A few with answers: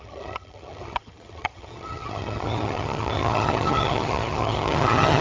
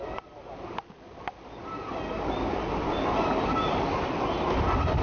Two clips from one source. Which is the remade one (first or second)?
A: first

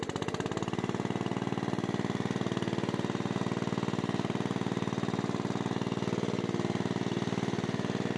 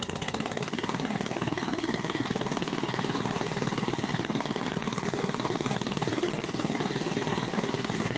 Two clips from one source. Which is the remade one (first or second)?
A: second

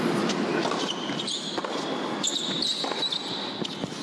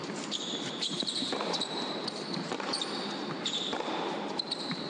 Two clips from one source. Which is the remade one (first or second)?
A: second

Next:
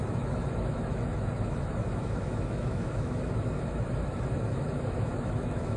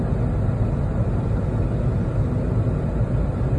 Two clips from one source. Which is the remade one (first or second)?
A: first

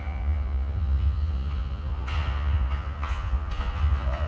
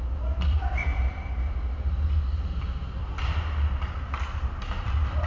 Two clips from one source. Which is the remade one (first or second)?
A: first